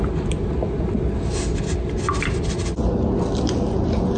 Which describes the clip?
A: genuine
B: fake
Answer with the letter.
A